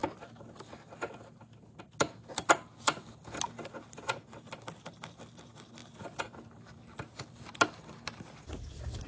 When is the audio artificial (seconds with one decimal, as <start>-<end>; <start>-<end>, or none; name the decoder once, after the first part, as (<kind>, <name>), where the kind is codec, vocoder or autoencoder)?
none

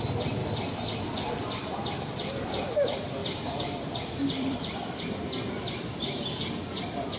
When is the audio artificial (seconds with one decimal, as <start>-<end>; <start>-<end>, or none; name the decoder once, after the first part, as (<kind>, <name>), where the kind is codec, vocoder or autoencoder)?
0.4-1.0 (vocoder, BigVGAN v2); 1.6-2.6; 3.2-5.0

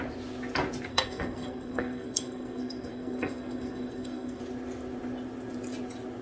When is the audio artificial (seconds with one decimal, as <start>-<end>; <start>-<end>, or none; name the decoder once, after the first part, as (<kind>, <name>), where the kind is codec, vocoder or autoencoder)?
0.9-4.4 (codec, SNAC)

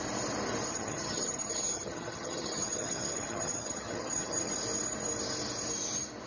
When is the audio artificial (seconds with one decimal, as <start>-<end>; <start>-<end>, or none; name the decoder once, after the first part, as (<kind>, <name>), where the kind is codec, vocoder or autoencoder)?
0.7-4.5 (vocoder, HiFi-GAN)

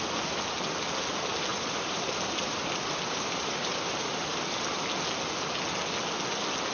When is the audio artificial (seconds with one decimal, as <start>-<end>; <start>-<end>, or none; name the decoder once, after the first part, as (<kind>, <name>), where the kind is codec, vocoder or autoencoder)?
1.5-4.8 (vocoder, BigVGAN v2)

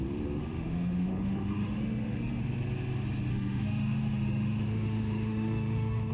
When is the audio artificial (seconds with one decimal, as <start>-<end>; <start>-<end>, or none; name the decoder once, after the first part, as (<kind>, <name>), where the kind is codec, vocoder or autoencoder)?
0.4-2.4 (autoencoder, DAC-VAE); 3.3-6.1